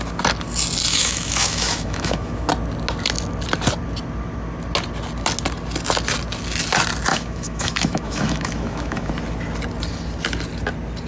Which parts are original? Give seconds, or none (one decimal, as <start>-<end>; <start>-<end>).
0.0-0.9; 2.5-7.1; 9.1-11.1